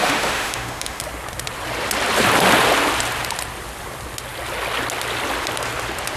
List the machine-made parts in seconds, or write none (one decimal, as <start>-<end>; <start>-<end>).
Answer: 0.0-1.0